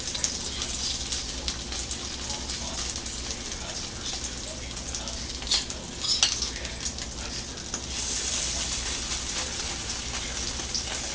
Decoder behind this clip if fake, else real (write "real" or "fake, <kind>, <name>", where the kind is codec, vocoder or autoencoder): real